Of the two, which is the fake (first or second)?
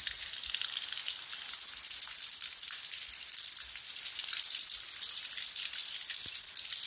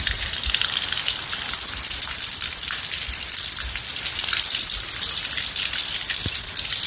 second